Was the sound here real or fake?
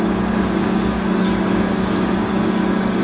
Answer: fake